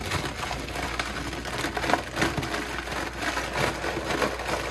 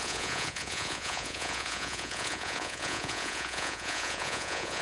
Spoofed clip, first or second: second